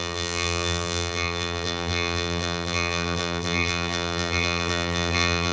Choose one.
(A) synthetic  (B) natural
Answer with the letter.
A